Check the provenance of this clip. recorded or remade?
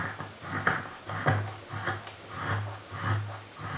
recorded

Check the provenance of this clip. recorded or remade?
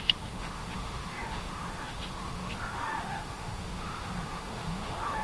remade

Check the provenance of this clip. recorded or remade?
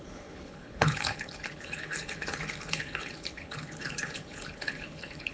remade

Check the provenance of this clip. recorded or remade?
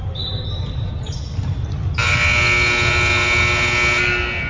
recorded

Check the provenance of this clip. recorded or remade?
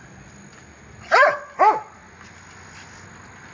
recorded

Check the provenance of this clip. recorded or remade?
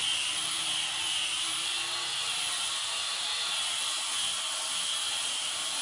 remade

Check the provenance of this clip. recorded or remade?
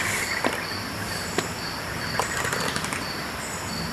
remade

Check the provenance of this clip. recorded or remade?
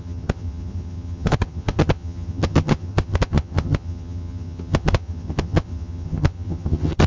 remade